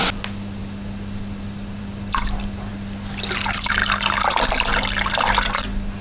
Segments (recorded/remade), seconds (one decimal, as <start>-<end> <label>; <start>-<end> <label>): 0.0-6.0 recorded